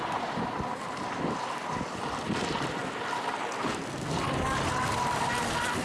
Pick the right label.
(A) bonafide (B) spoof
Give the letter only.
A